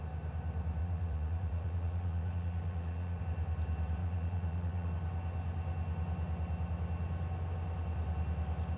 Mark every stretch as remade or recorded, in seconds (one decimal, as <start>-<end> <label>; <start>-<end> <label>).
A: 0.0-0.8 recorded; 0.8-3.2 remade; 3.2-4.0 recorded; 4.0-4.9 remade; 4.9-8.8 recorded